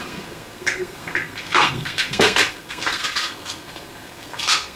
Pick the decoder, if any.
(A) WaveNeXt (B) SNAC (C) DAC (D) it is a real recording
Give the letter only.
B